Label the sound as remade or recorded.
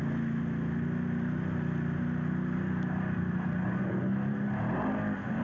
recorded